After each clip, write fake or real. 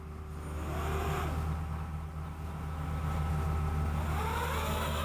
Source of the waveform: real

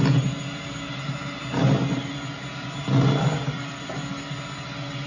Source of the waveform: real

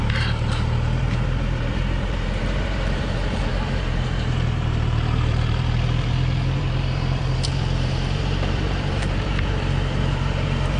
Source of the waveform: fake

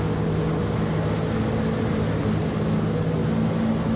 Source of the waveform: real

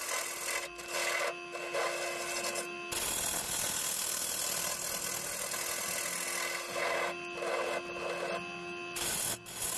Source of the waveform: real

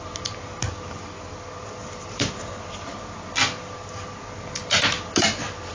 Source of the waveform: real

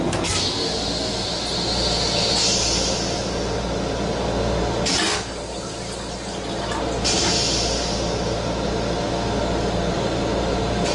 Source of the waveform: real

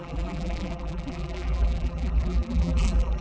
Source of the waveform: fake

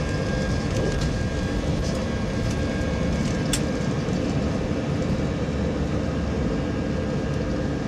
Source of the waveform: real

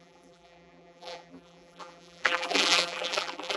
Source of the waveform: fake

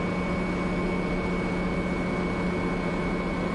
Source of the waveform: real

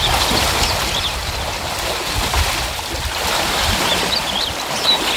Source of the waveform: fake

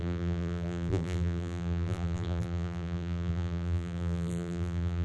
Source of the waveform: fake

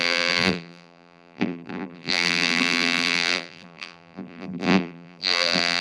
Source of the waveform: fake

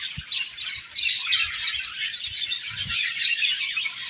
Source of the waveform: fake